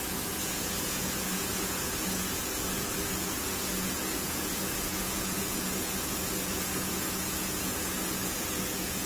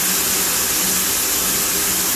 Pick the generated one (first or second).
first